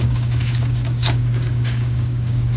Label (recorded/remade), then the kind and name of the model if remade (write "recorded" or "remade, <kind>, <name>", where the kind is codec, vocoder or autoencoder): remade, codec, DAC